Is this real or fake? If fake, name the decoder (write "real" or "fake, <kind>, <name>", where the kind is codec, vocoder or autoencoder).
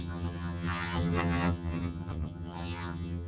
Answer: fake, vocoder, HiFi-GAN